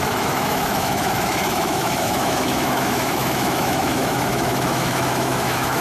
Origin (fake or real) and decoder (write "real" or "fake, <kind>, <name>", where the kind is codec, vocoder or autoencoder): fake, autoencoder, DAC-VAE